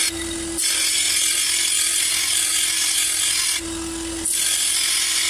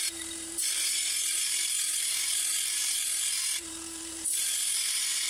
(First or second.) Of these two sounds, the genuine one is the first